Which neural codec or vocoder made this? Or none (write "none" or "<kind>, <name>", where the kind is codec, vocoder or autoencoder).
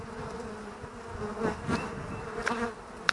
none